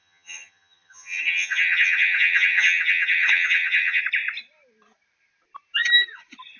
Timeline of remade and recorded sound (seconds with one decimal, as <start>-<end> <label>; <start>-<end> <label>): 0.0-4.0 remade; 4.0-6.6 recorded

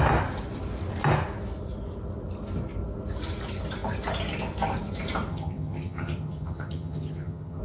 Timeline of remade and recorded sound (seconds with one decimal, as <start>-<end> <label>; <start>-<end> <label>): 0.0-5.3 recorded; 5.3-7.6 remade